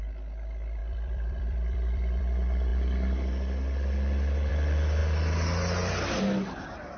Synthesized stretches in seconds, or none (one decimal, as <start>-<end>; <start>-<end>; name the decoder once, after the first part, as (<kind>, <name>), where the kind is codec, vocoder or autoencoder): 0.8-2.2 (vocoder, BigVGAN v2)